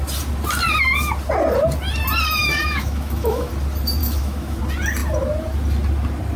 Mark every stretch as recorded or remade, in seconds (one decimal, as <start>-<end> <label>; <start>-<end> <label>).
0.0-2.4 recorded; 2.4-3.5 remade; 3.5-4.0 recorded; 4.0-4.6 remade; 4.6-6.4 recorded